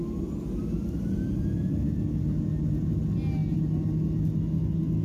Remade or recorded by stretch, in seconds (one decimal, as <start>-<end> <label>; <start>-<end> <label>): 0.0-5.0 recorded